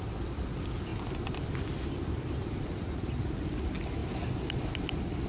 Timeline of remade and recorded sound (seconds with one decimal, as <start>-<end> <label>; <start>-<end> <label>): 0.0-4.0 remade; 4.0-4.7 recorded; 4.7-5.3 remade